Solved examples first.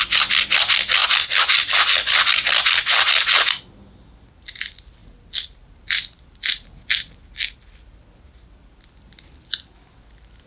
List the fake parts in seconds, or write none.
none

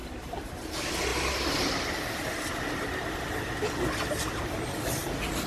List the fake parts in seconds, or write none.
none

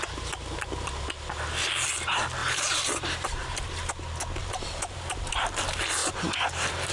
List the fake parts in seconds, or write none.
2.4-3.9 (vocoder, BigVGAN v2); 4.4-5.6

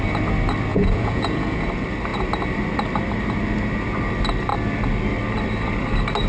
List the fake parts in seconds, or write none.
0.7-1.6 (vocoder, Vocos)

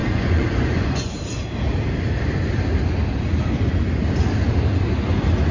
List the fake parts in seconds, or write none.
0.0-1.1 (vocoder, Vocos)

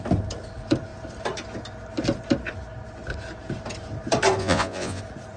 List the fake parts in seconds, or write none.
4.4-5.0 (vocoder, Vocos)

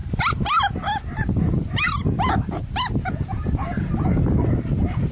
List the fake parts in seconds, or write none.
none

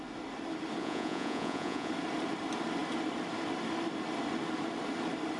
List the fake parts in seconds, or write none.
0.8-1.9 (vocoder, Vocos)